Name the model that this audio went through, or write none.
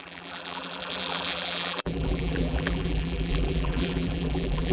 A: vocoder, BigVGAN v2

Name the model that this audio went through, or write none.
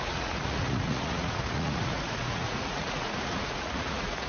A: vocoder, Vocos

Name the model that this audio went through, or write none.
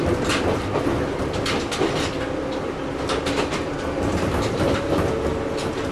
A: none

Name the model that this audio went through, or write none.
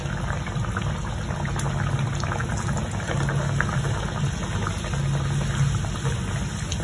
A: none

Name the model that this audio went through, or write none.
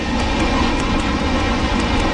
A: vocoder, Vocos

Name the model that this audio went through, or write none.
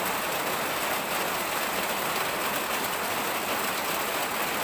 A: none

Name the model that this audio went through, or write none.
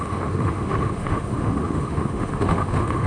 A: autoencoder, DAC-VAE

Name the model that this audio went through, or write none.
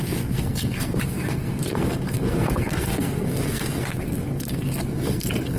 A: codec, SNAC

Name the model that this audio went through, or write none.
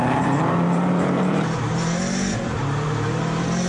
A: vocoder, BigVGAN v2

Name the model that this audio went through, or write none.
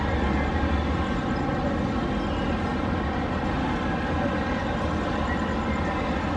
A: none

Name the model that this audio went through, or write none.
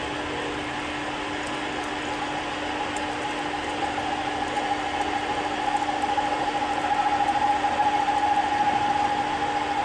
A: none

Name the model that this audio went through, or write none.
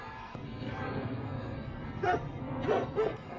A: codec, SNAC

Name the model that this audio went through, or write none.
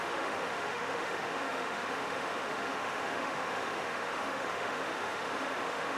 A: autoencoder, DAC-VAE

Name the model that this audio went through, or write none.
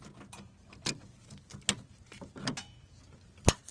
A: none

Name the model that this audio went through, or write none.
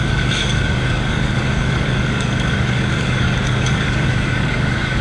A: codec, DAC